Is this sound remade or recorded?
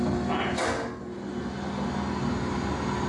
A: recorded